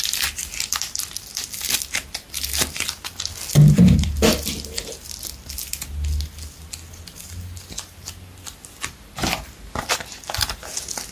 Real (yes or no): yes